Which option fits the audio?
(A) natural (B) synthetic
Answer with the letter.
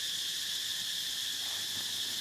A